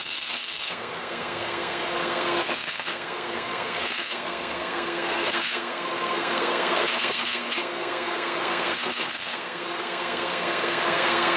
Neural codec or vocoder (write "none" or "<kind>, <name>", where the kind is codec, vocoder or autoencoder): codec, SNAC